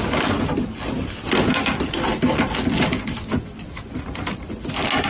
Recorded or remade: recorded